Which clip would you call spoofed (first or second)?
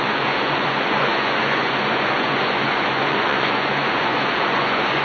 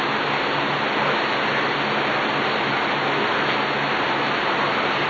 first